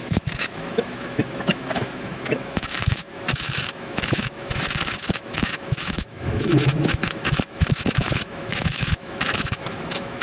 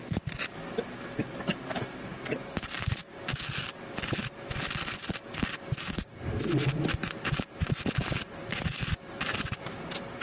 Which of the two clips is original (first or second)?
second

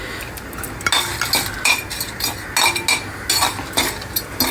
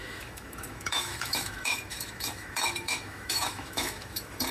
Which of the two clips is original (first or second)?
first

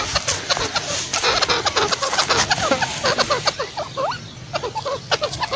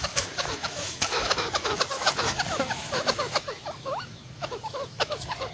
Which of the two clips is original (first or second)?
first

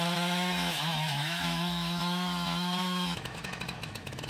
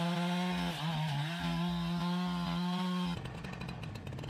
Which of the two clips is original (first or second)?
second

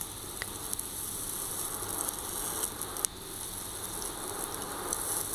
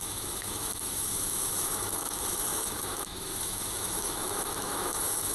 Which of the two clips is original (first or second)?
first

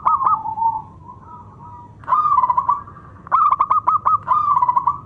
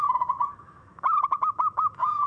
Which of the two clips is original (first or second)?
first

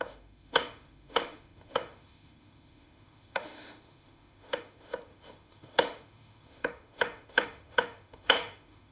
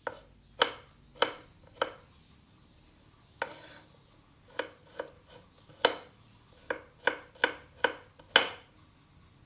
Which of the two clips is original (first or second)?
second